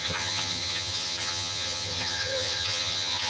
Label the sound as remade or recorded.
remade